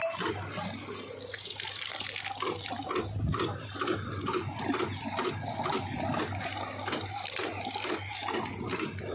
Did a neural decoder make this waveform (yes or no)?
no